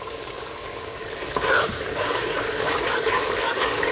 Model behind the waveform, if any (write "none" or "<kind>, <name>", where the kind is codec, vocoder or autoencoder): codec, DAC